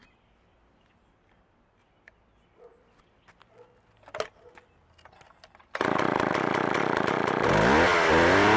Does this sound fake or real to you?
real